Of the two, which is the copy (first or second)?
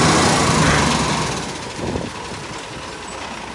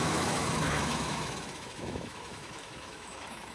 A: second